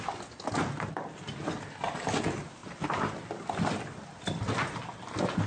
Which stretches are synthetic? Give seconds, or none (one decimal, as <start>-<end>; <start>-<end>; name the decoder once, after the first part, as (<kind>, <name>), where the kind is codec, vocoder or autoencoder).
none